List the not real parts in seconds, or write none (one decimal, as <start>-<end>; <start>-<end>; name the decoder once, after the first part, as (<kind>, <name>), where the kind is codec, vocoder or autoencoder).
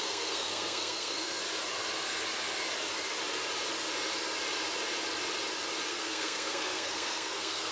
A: 0.0-1.4 (codec, SNAC); 5.9-7.7